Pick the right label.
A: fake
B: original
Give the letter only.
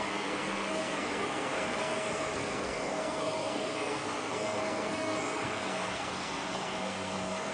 A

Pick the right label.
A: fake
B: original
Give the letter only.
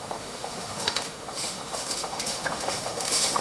A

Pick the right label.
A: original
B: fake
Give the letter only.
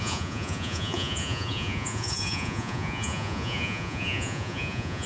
B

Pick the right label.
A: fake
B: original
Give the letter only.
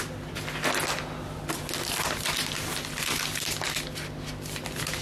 A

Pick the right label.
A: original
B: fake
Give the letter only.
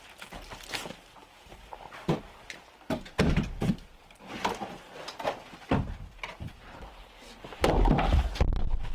A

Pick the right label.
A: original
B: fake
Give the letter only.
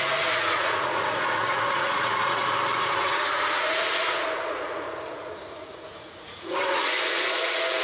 B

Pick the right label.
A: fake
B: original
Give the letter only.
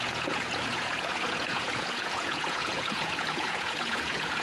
A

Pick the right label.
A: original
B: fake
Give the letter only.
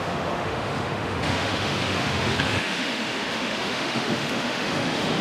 B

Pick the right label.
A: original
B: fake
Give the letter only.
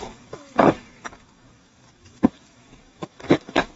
B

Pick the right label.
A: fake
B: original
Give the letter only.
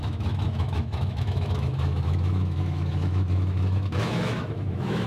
A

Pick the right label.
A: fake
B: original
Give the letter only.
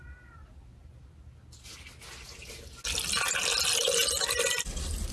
B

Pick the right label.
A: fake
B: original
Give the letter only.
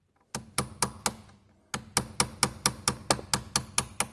B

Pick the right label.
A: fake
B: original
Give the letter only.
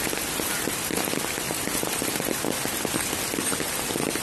B